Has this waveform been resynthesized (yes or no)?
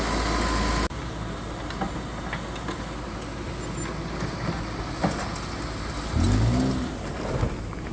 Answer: no